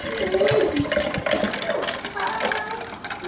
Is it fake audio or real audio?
real